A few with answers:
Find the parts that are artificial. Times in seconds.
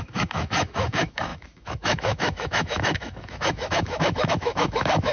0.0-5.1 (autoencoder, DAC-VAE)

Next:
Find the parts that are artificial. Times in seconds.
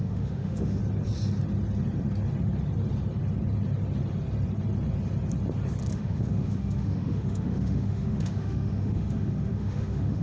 0.0-0.8 (autoencoder, DAC-VAE); 5.9-10.2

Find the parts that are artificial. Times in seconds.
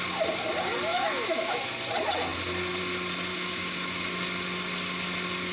0.9-1.7 (autoencoder, DAC-VAE); 3.3-4.0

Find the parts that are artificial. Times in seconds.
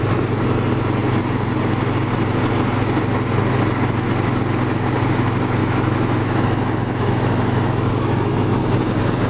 5.6-8.8 (autoencoder, DAC-VAE)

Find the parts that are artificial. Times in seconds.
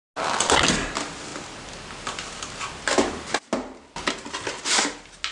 none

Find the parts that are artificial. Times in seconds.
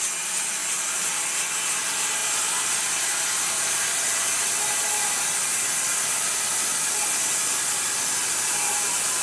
none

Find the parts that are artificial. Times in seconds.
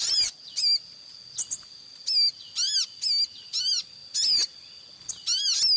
none